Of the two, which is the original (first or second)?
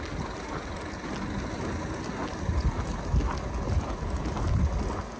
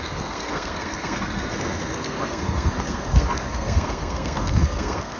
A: first